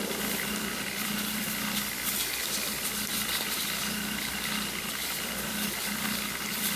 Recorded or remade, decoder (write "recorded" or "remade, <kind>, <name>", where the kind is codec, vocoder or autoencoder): remade, vocoder, BigVGAN v2